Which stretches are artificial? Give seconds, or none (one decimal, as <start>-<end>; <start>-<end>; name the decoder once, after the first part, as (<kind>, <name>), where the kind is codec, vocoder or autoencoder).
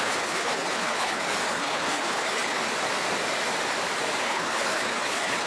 0.0-2.6 (codec, HILCodec); 4.2-5.5